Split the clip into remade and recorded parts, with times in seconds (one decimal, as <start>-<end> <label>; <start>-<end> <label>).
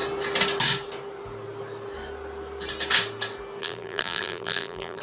0.0-3.6 recorded; 3.6-5.0 remade